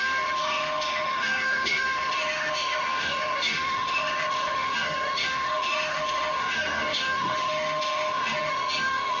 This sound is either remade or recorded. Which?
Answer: remade